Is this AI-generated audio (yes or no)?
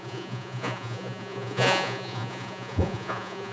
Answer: yes